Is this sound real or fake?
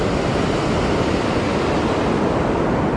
real